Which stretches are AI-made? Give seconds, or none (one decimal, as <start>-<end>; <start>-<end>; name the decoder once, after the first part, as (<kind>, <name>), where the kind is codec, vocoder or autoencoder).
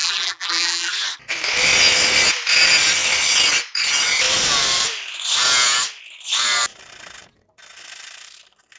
0.0-0.9 (vocoder, BigVGAN v2)